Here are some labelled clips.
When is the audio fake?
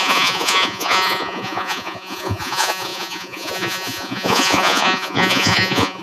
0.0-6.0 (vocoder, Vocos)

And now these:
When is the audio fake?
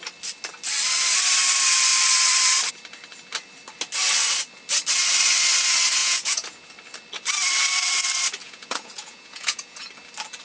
6.0-6.7 (vocoder, Vocos); 8.4-9.9